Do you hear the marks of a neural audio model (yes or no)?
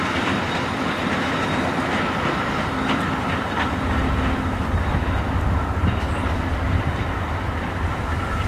no